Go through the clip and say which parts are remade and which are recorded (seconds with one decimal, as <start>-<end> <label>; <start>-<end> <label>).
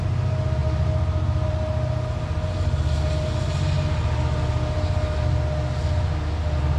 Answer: 0.0-6.8 recorded